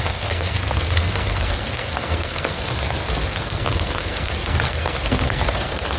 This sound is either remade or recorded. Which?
remade